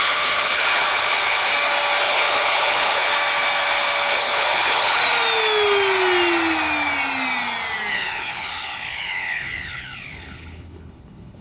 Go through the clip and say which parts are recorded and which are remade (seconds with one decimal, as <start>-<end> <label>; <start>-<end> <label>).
0.0-1.5 remade; 1.5-2.0 recorded; 2.0-3.1 remade; 3.1-4.1 recorded; 4.1-5.0 remade; 5.0-7.9 recorded; 7.9-11.4 remade